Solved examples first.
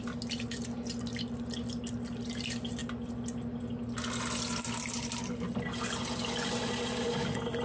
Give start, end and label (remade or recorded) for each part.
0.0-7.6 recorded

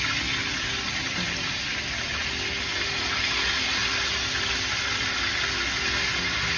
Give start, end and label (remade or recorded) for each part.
0.0-6.6 recorded

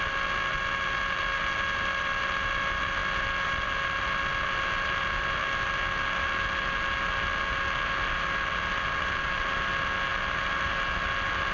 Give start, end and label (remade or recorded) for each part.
0.0-11.5 recorded